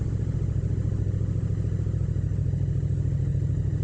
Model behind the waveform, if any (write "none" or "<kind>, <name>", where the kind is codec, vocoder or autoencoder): none